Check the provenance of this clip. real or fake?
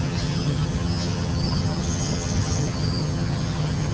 fake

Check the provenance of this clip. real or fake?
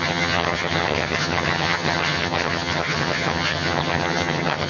fake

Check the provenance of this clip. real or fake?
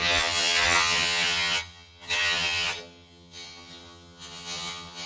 fake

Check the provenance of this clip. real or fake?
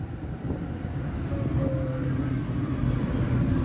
real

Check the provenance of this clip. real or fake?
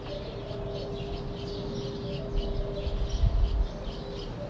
real